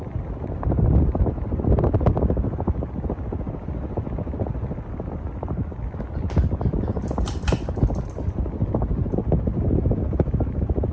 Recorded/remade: recorded